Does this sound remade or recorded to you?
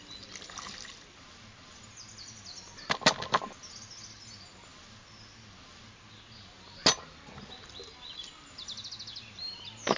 recorded